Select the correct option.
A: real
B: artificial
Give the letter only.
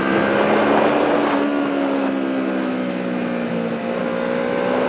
A